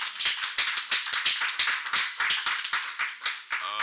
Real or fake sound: real